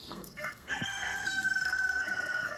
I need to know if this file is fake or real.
fake